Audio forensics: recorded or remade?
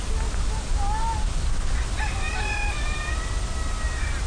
recorded